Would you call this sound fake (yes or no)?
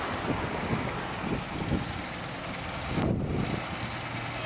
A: no